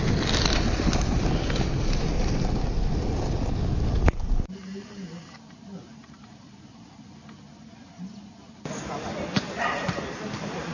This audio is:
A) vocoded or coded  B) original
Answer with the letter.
B